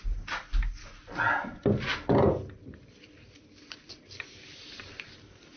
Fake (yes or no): no